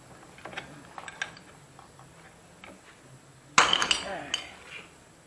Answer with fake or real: real